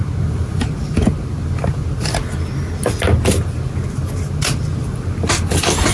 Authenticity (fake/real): real